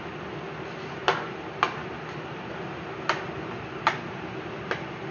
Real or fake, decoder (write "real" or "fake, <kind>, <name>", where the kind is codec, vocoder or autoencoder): real